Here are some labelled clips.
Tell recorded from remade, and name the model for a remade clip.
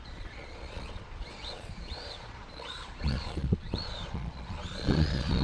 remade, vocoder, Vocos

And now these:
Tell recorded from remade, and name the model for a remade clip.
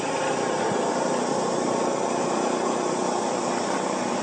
recorded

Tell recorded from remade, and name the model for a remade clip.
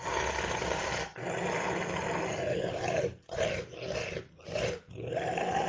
recorded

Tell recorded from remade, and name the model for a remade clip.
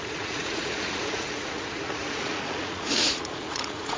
remade, vocoder, Vocos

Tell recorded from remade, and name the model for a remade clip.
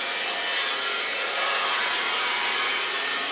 remade, vocoder, Vocos